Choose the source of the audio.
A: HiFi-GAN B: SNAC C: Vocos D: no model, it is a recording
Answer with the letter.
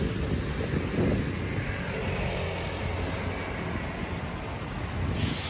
D